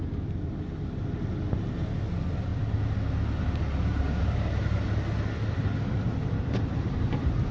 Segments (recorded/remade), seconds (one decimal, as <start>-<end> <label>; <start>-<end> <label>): 0.0-7.5 recorded